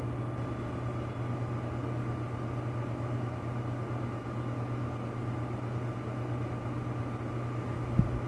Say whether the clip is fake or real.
real